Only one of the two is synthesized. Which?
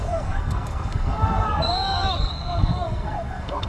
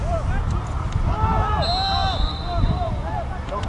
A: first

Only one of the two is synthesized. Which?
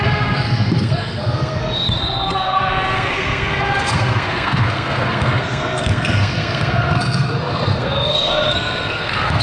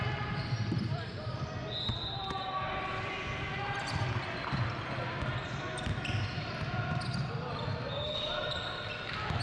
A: first